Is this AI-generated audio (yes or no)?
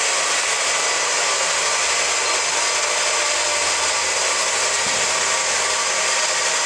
no